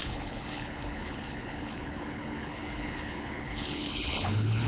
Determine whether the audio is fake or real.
fake